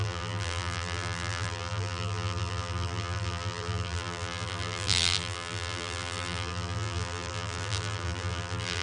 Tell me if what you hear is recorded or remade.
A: remade